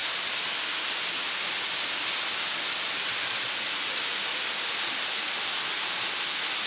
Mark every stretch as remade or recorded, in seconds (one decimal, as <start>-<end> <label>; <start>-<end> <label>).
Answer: 0.0-6.7 recorded